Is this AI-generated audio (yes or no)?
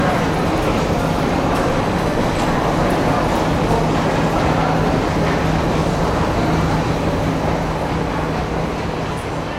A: no